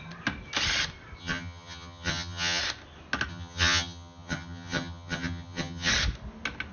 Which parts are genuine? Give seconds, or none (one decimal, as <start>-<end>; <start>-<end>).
0.0-1.2; 2.6-3.3; 5.9-6.7